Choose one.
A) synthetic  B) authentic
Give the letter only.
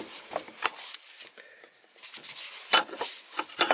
B